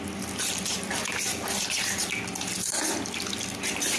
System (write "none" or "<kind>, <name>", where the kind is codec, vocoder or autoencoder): none